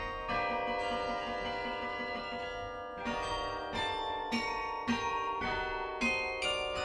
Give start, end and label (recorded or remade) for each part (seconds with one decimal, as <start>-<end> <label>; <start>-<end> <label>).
0.0-1.6 recorded; 1.6-2.2 remade; 2.2-3.3 recorded; 3.3-5.9 remade; 5.9-6.8 recorded